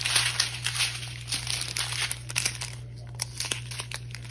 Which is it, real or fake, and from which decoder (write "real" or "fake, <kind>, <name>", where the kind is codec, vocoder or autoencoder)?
real